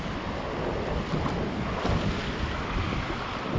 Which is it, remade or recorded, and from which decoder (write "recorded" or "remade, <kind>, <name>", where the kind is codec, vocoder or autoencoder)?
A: recorded